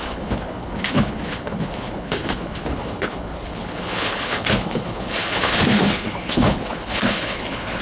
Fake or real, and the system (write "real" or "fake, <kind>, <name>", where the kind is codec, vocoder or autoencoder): fake, codec, HILCodec